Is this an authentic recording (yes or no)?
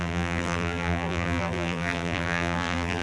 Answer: no